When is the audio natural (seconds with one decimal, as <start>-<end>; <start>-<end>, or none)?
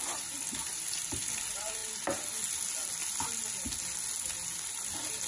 1.8-5.3